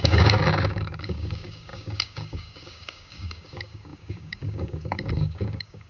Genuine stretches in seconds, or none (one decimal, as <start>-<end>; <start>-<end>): none